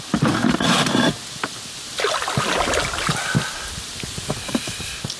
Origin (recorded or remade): recorded